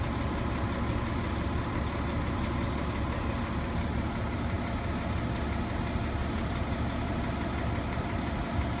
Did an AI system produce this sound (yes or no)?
no